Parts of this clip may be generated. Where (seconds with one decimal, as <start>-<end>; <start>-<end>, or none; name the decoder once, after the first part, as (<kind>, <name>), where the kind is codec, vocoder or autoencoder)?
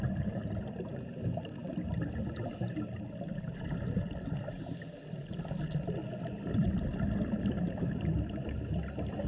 none